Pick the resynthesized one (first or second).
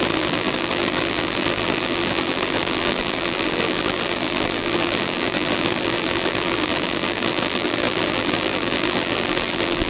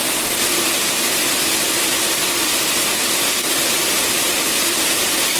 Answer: first